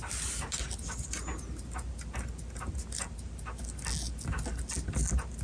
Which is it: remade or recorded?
recorded